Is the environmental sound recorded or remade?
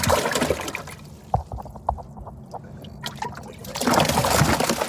recorded